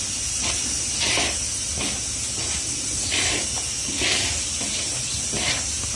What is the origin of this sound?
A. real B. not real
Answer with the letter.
A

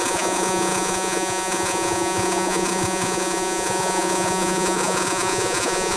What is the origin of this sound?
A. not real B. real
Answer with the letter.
A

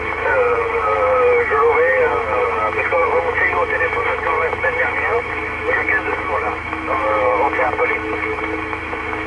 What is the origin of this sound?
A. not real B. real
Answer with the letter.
A